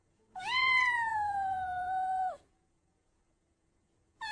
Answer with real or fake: fake